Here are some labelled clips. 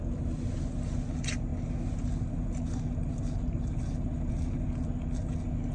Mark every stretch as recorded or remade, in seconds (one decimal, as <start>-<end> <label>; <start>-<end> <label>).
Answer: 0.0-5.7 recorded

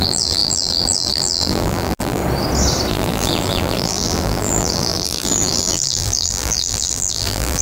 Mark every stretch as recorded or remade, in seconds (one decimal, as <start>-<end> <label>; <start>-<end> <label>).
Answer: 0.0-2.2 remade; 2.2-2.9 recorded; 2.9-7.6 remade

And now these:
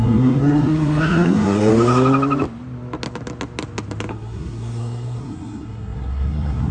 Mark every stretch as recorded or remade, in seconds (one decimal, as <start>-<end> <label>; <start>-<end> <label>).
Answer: 0.0-1.7 remade; 1.7-4.1 recorded; 4.1-6.7 remade